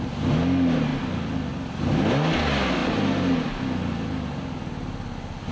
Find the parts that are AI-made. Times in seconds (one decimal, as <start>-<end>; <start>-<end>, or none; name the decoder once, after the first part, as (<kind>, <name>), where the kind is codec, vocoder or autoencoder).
none